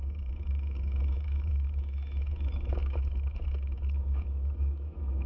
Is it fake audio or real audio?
fake